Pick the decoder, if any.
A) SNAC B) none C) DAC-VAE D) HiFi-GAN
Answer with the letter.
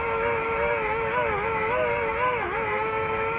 C